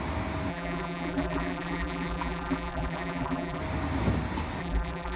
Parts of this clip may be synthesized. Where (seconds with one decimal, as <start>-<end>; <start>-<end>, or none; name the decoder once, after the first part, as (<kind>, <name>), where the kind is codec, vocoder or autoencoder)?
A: 0.5-3.6 (vocoder, BigVGAN v2); 4.6-5.2